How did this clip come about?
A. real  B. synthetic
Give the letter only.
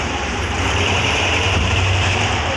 B